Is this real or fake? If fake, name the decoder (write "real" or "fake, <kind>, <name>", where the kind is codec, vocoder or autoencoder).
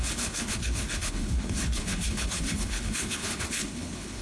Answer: fake, codec, HILCodec